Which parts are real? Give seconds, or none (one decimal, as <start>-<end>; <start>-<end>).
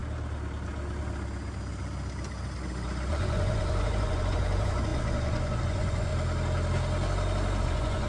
0.0-3.1; 6.1-7.6